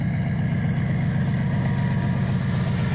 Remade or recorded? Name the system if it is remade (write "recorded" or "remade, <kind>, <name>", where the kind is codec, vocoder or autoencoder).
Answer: recorded